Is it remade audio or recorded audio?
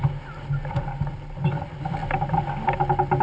recorded